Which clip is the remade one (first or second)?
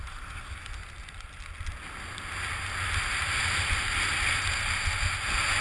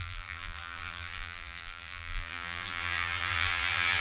second